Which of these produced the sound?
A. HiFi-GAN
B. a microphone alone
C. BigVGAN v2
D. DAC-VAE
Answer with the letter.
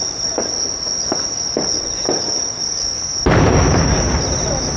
B